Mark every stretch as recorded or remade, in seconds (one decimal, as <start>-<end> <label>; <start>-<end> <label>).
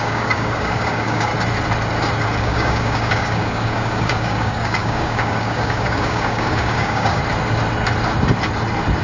0.0-1.3 remade; 1.3-2.4 recorded; 2.4-7.2 remade; 7.2-9.0 recorded